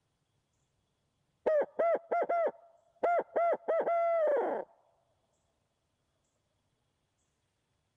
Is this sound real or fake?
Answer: real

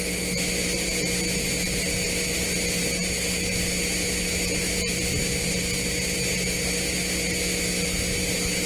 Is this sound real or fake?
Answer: real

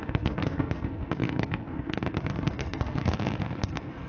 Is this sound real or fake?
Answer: fake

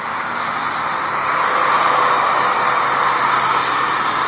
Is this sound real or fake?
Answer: real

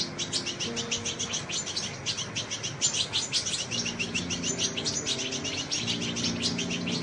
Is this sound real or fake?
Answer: real